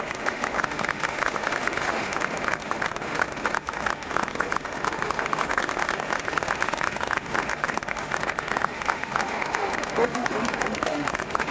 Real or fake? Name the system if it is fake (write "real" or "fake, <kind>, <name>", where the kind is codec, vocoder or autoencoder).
fake, autoencoder, DAC-VAE